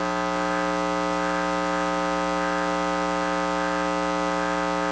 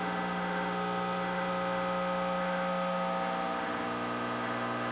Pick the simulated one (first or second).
second